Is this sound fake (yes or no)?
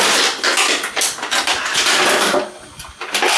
no